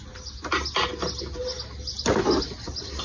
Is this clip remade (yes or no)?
no